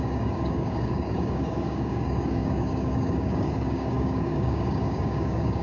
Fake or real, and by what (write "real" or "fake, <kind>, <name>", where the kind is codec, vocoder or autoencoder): fake, codec, DAC